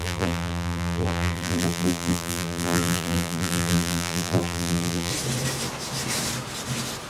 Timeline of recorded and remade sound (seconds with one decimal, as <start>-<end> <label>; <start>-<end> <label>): 0.0-5.1 remade; 5.1-7.1 recorded